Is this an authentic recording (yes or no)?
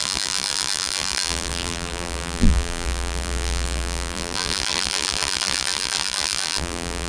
no